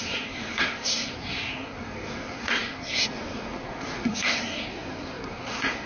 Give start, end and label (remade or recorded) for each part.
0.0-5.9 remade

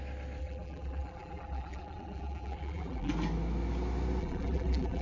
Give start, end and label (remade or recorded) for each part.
0.0-0.4 recorded; 0.4-3.1 remade; 3.1-4.2 recorded; 4.2-5.0 remade

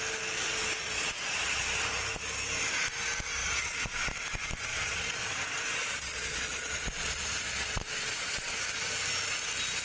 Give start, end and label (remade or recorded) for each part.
0.0-0.8 recorded; 0.8-1.6 remade; 1.6-3.4 recorded; 3.4-4.1 remade; 4.1-4.7 recorded; 4.7-8.5 remade; 8.5-9.8 recorded